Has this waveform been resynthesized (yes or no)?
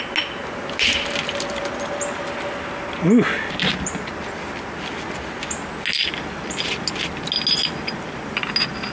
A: no